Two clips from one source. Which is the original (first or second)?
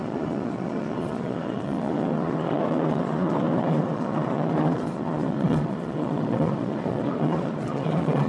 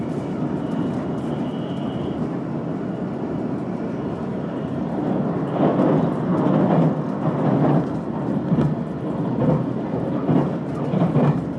second